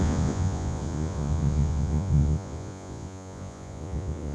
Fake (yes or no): yes